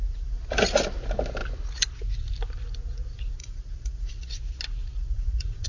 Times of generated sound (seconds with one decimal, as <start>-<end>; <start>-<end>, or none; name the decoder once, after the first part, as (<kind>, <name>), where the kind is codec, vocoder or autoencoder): 3.4-4.3 (vocoder, Vocos); 4.8-5.7